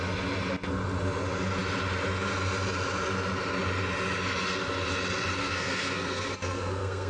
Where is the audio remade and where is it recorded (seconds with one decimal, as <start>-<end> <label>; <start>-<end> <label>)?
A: 0.0-5.4 recorded; 5.4-7.1 remade